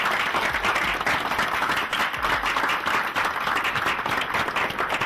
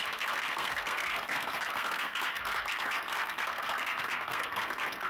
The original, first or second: first